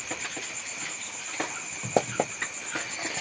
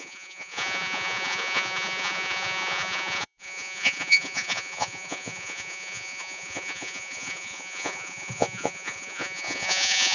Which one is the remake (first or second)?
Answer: second